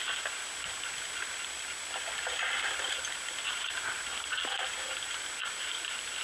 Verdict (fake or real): real